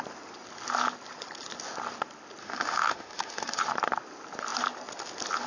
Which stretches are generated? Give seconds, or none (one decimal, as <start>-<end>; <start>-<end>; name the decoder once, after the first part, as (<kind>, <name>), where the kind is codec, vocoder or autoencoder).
2.4-3.6 (autoencoder, DAC-VAE)